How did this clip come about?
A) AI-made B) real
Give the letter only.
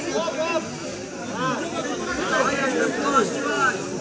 B